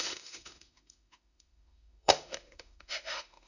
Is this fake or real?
fake